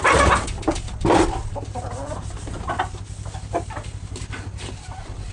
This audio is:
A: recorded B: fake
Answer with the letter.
A